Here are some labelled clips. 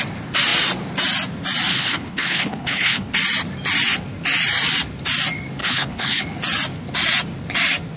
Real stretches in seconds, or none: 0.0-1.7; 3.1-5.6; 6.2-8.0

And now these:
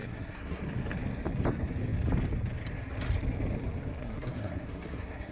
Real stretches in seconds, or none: 0.6-4.0

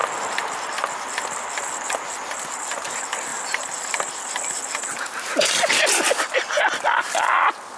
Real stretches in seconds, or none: 0.0-7.8

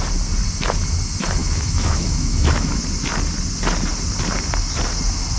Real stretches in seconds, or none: 0.0-1.4; 2.8-5.4